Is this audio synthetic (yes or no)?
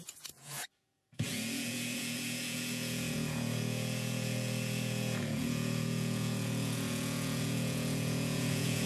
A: yes